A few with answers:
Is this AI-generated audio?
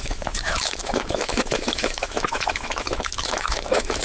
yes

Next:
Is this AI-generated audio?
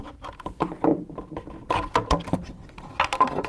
no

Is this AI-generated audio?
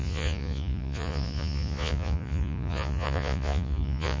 yes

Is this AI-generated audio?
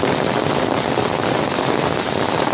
no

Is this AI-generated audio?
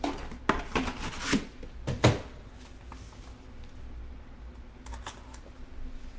no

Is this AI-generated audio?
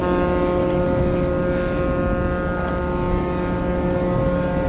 no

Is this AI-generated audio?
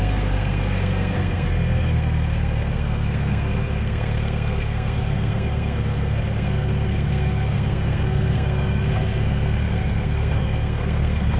yes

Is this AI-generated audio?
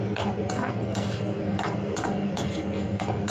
yes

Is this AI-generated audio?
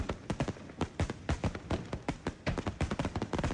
no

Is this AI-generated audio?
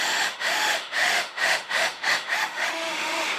yes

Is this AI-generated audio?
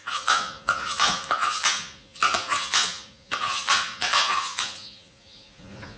yes